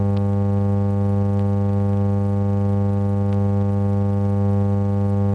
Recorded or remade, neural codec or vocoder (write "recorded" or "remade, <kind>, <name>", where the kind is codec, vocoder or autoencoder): recorded